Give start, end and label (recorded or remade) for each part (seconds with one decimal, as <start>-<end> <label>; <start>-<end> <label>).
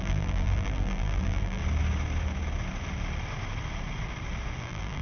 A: 0.0-1.6 remade; 1.6-4.6 recorded; 4.6-5.0 remade